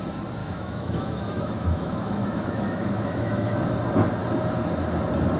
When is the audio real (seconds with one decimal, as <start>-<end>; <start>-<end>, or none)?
0.0-0.4; 3.6-5.4